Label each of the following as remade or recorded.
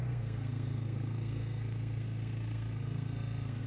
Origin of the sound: remade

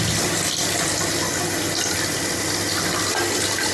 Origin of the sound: recorded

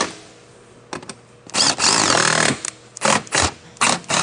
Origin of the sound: recorded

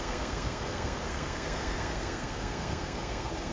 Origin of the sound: remade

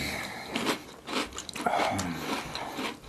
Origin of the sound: recorded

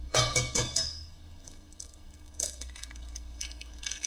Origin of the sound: remade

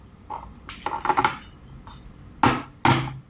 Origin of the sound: recorded